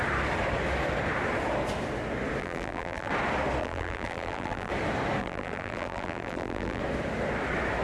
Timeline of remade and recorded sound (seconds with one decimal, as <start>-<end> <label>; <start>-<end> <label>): 0.0-2.4 recorded; 2.4-3.1 remade; 3.1-3.6 recorded; 3.6-4.7 remade; 4.7-5.2 recorded; 5.2-6.8 remade; 6.8-7.8 recorded